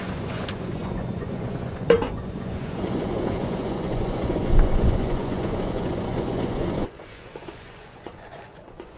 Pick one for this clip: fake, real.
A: fake